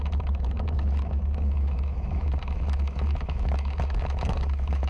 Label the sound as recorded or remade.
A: remade